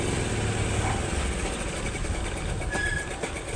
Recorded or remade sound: recorded